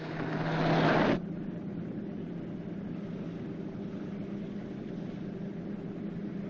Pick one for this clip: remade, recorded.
recorded